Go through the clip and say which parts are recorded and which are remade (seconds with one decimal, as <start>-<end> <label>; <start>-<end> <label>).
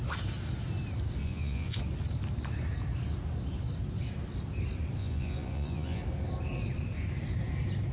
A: 0.0-1.2 recorded; 1.2-1.8 remade; 1.8-5.0 recorded; 5.0-6.0 remade; 6.0-7.9 recorded